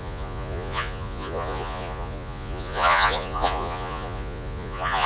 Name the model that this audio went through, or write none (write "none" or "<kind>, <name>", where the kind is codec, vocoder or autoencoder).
vocoder, Vocos